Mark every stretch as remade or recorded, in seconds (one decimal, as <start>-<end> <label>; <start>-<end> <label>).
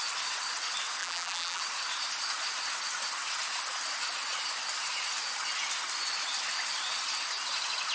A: 0.0-1.0 recorded; 1.0-1.6 remade; 1.6-7.9 recorded